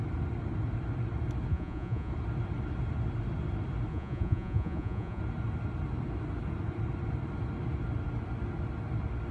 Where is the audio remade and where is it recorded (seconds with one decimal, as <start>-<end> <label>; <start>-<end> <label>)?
0.0-1.5 recorded; 1.5-2.1 remade; 2.1-3.9 recorded; 3.9-5.2 remade; 5.2-9.3 recorded